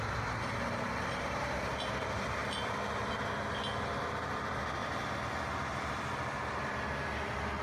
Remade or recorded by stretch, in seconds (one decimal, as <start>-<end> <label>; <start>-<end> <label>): 0.0-4.8 recorded; 4.8-6.7 remade; 6.7-7.6 recorded